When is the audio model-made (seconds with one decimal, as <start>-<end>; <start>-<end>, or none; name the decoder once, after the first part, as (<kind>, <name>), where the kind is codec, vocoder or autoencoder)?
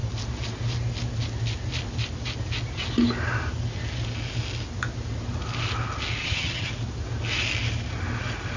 6.2-6.7 (vocoder, HiFi-GAN)